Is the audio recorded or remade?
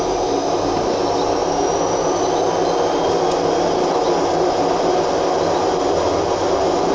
recorded